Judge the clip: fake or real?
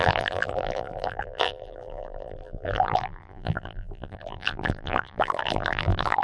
fake